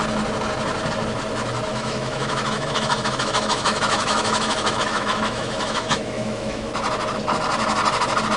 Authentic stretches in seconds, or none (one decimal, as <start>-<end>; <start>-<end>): 0.0-1.7; 6.7-8.4